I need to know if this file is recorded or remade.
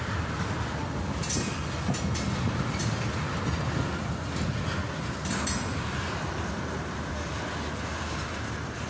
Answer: recorded